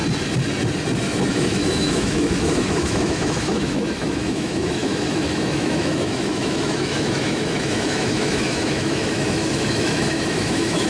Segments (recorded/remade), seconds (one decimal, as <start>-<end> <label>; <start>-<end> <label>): 0.0-1.3 recorded; 1.3-10.9 remade